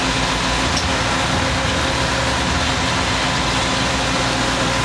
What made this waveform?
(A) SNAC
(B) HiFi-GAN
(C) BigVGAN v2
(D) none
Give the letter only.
D